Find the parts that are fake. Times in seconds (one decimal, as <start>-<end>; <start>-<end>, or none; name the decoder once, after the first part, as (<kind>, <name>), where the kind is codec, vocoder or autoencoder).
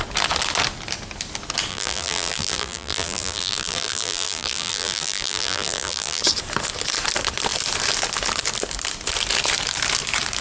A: 1.7-6.2 (vocoder, BigVGAN v2)